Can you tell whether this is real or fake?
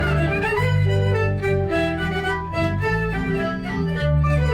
fake